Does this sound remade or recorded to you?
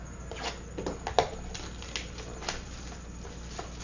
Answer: recorded